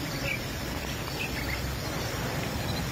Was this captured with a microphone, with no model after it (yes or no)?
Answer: yes